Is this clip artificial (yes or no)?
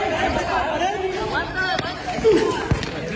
yes